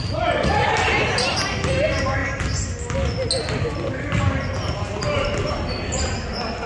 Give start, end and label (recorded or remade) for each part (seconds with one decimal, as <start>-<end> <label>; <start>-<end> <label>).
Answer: 0.0-6.7 recorded

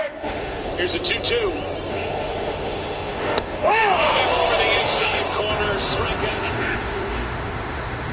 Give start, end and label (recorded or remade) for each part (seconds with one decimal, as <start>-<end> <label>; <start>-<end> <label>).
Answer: 0.0-0.7 remade; 0.7-1.9 recorded; 1.9-4.2 remade; 4.2-4.8 recorded; 4.8-5.2 remade; 5.2-6.3 recorded; 6.3-8.1 remade

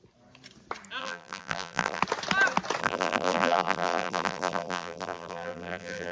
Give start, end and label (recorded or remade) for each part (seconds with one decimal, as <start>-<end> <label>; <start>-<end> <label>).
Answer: 0.0-1.0 recorded; 1.0-2.0 remade; 2.0-2.8 recorded; 2.8-6.1 remade

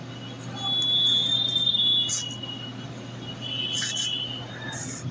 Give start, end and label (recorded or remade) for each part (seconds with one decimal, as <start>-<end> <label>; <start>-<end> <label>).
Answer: 0.0-5.1 recorded

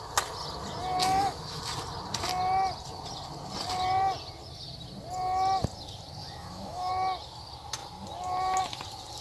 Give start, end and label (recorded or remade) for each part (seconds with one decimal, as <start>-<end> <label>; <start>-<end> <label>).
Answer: 0.0-1.0 recorded; 1.0-1.6 remade; 1.6-6.2 recorded; 6.2-6.9 remade; 6.9-9.2 recorded

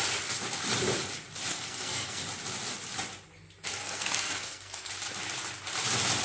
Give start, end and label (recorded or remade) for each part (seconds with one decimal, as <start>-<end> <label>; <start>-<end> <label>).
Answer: 0.0-1.5 recorded; 1.5-2.2 remade; 2.2-3.8 recorded; 3.8-4.9 remade; 4.9-6.2 recorded

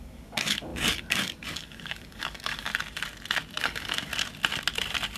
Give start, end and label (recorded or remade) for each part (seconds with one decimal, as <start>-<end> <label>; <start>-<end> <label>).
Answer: 0.0-2.7 remade; 2.7-3.6 recorded; 3.6-4.1 remade; 4.1-5.2 recorded

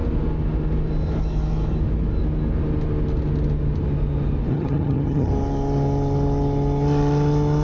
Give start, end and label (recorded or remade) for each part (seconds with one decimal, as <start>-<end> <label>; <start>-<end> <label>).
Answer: 0.0-4.5 recorded; 4.5-5.3 remade; 5.3-7.6 recorded